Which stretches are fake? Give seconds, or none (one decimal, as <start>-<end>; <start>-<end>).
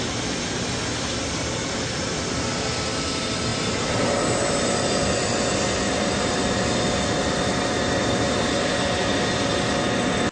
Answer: none